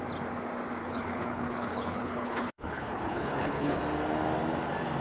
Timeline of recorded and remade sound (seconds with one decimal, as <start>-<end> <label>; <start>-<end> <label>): 0.0-0.8 recorded; 0.8-3.8 remade; 3.8-5.0 recorded